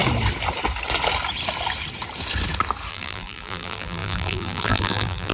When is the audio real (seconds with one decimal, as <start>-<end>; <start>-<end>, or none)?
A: 0.0-2.9